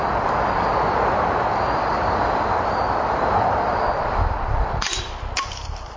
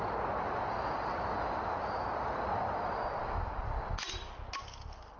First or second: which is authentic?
second